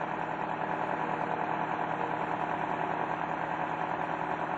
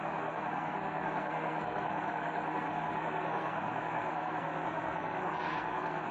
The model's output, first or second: second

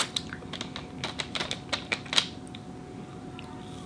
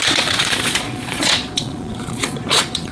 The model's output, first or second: second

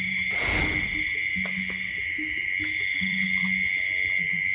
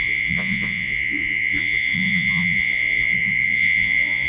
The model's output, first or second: second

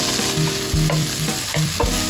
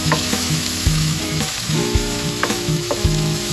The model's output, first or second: second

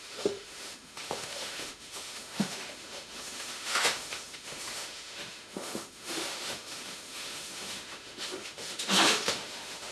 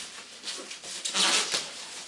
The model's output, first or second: first